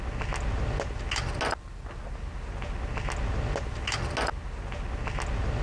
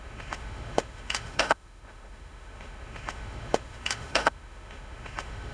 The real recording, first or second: first